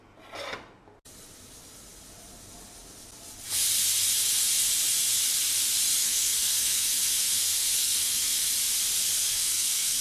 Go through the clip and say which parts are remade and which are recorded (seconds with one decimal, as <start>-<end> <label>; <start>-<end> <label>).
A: 0.0-6.0 recorded; 6.0-8.5 remade; 8.5-9.2 recorded; 9.2-10.0 remade